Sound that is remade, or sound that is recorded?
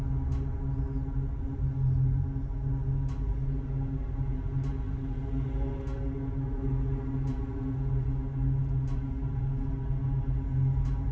recorded